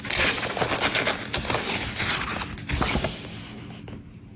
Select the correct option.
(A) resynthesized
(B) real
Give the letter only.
B